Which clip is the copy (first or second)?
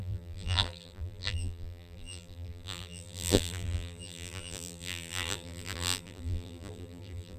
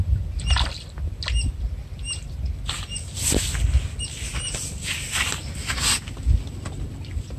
first